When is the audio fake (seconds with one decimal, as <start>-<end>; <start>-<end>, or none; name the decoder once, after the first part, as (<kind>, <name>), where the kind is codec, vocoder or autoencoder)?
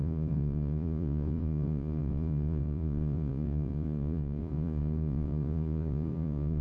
0.0-6.6 (vocoder, Vocos)